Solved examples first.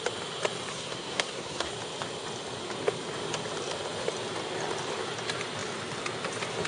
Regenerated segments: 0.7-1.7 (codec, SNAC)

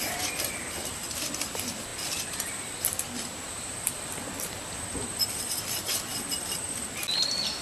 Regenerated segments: 0.0-7.6 (vocoder, BigVGAN v2)

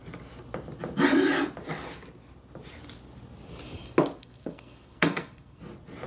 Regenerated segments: 4.2-5.6 (codec, SNAC)

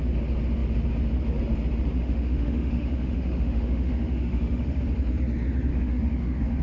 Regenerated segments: 2.0-4.8 (autoencoder, DAC-VAE); 5.7-6.6

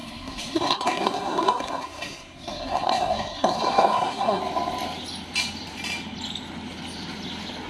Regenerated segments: 0.0-4.4 (codec, SNAC)

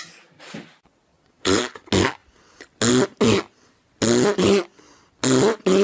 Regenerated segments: 1.1-1.6 (vocoder, Vocos)

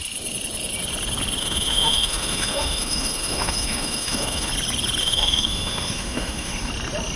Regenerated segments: 1.4-4.5 (autoencoder, DAC-VAE); 5.0-6.7